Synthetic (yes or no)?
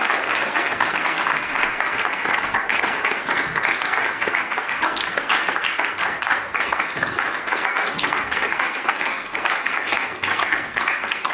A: yes